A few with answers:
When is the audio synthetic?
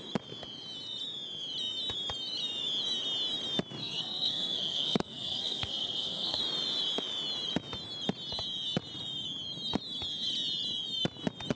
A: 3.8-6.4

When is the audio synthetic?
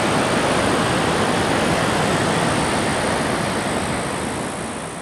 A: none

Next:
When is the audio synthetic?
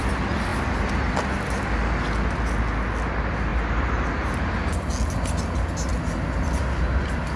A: none